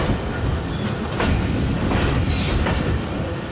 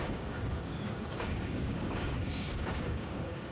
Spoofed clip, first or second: second